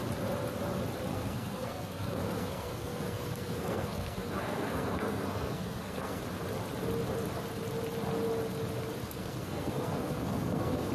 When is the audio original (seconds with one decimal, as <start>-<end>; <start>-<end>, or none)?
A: 0.0-1.1; 6.2-9.0